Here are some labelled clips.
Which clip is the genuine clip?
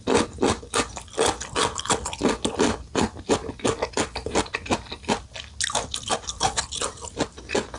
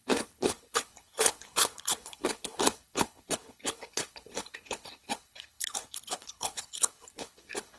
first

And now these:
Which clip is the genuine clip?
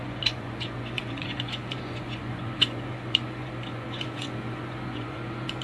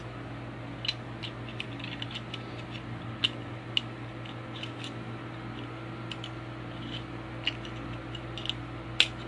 second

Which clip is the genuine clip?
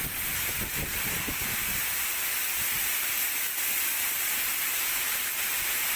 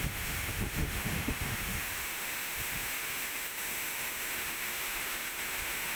first